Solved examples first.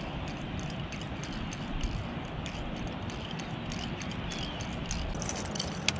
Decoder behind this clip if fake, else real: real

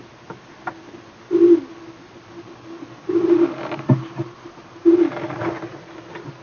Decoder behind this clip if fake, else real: real